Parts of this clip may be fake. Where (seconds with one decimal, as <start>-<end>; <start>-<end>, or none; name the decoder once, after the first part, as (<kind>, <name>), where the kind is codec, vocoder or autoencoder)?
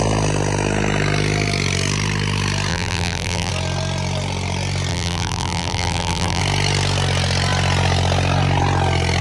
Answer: 2.7-3.5 (vocoder, BigVGAN v2); 4.9-6.4